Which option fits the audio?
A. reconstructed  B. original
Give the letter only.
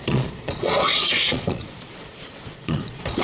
A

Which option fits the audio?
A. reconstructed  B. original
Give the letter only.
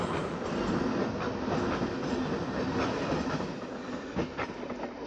B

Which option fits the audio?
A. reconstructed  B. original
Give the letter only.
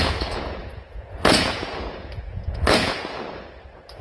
A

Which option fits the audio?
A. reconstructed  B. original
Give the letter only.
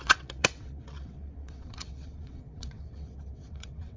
A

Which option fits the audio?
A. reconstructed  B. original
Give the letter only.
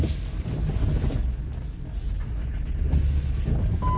B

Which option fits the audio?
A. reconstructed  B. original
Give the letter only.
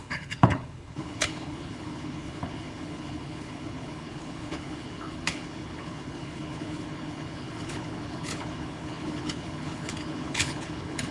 A